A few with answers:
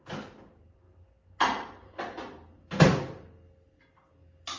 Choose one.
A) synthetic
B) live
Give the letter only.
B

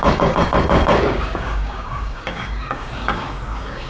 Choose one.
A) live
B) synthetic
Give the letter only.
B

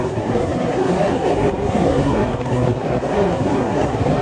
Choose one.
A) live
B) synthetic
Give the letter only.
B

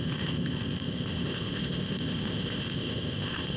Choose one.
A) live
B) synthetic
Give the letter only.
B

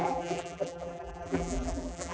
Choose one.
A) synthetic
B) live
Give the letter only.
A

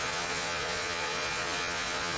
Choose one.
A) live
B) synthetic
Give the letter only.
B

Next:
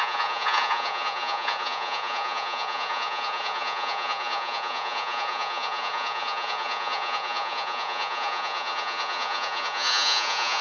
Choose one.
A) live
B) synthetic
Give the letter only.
B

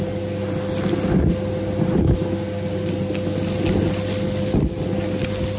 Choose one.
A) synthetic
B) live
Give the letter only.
B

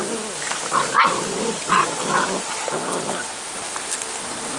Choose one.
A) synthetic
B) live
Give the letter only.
B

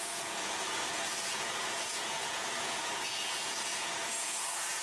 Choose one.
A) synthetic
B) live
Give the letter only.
A